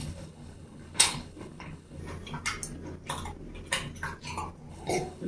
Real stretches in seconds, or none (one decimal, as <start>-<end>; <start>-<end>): 2.0-4.7